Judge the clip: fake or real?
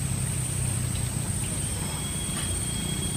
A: real